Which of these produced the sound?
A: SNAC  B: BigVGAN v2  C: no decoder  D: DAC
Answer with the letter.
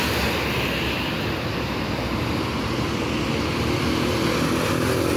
C